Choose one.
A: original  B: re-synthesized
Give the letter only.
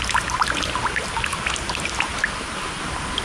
A